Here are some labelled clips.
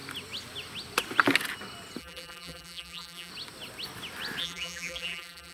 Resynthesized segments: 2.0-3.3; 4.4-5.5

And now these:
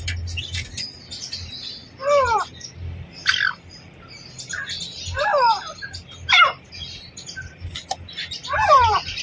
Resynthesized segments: 8.4-9.2

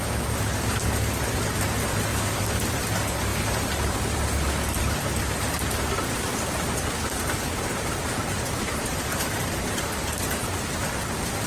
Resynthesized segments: 2.1-2.8; 3.3-4.2; 6.3-10.8

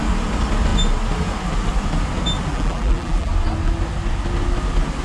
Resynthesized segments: 2.5-3.3

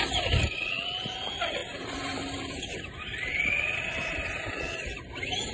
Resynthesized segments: 1.6-2.6; 3.5-4.5

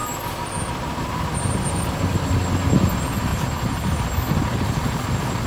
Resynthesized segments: none

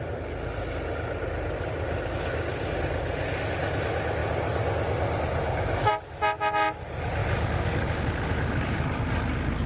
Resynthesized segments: 7.2-8.0

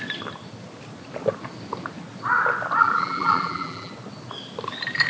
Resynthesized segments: 2.8-3.9